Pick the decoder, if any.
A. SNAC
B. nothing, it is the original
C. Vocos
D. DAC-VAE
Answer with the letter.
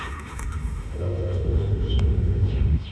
D